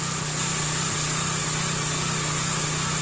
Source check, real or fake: real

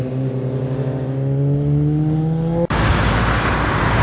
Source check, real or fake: real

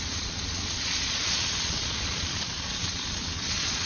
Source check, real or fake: fake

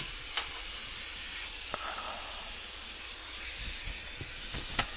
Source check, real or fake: real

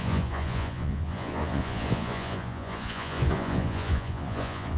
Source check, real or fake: fake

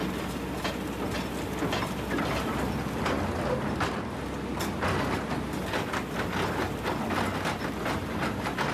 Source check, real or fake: real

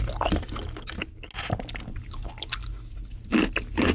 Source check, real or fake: real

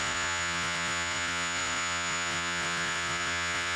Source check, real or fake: fake